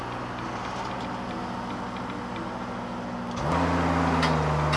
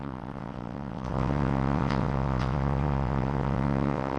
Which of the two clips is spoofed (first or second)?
second